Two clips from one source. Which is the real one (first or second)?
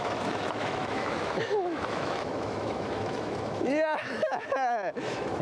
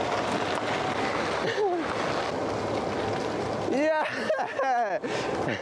second